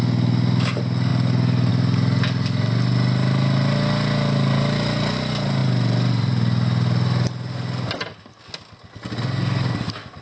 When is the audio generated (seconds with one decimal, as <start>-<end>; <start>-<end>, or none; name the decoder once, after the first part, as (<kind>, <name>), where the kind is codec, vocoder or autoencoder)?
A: none